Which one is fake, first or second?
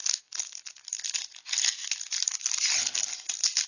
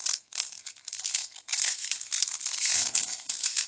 second